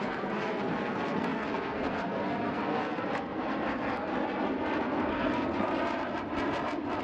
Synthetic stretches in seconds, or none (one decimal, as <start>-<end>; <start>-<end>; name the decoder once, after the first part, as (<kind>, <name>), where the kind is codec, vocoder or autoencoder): 0.0-4.1 (codec, SNAC); 4.8-5.7